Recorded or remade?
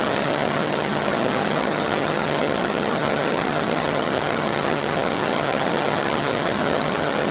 remade